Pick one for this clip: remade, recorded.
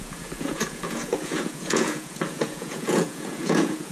remade